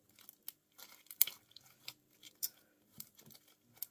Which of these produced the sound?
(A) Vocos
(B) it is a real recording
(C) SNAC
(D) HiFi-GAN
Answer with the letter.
B